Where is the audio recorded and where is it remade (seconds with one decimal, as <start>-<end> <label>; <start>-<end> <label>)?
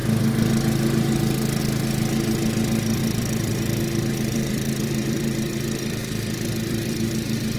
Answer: 0.0-3.0 recorded; 3.0-7.6 remade